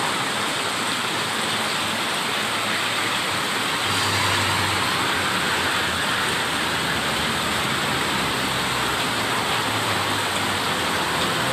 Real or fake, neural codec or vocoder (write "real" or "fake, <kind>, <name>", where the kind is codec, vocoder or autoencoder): real